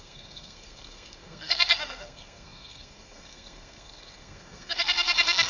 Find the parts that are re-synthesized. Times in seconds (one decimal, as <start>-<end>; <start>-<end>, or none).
0.0-5.5